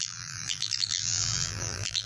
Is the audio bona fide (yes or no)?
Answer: no